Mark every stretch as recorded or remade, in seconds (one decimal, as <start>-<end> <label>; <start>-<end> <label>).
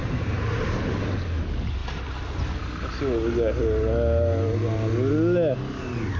0.0-0.9 remade; 0.9-6.2 recorded